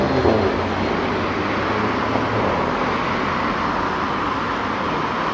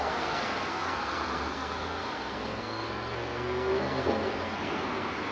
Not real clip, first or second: second